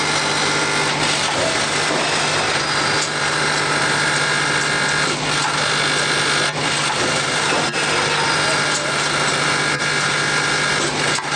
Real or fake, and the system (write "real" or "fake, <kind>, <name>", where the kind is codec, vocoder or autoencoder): real